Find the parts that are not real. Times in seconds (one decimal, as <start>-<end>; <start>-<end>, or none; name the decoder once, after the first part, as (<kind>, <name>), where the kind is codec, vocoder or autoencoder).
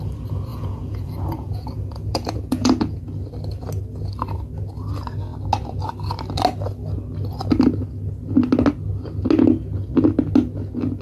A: 0.5-3.0 (vocoder, Vocos)